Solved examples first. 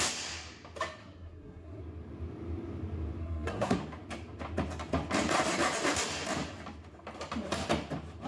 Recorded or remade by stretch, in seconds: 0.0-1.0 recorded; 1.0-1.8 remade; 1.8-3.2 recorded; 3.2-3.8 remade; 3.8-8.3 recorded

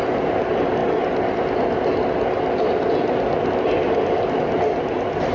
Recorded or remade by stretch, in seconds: 0.0-5.3 recorded

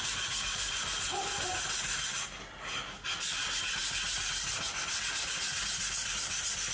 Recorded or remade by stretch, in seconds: 0.0-6.7 recorded